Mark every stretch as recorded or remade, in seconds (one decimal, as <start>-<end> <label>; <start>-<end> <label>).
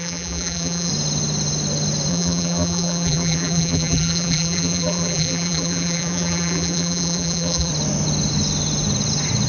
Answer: 0.0-0.9 remade; 0.9-2.1 recorded; 2.1-7.7 remade; 7.7-9.5 recorded